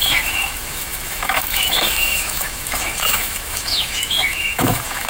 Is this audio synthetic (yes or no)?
yes